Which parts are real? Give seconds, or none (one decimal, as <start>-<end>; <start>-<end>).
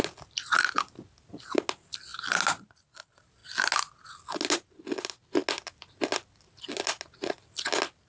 0.0-8.1